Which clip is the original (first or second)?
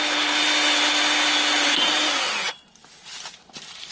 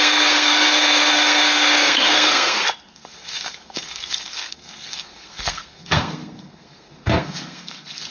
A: first